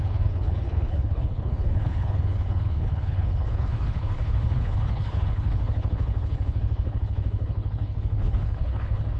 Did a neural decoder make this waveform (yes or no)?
yes